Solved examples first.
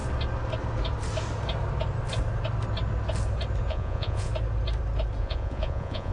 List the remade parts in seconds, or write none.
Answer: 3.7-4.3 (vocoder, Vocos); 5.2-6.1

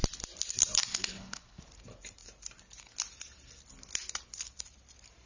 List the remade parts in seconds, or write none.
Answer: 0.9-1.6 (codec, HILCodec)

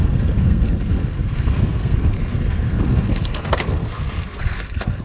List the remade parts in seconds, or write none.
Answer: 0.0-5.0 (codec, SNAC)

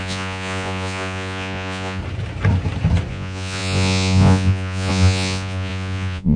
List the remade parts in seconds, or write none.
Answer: 0.0-2.0 (vocoder, Vocos); 3.1-6.4